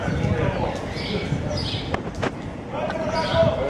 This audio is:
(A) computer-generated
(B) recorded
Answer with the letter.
B